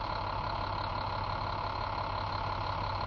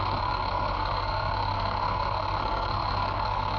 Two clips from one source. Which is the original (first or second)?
first